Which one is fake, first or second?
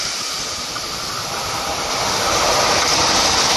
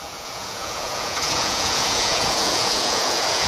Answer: second